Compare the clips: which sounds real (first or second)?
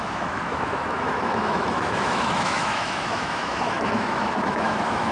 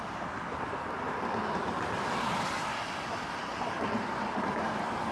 second